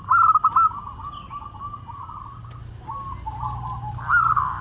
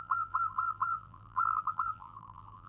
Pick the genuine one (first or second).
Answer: first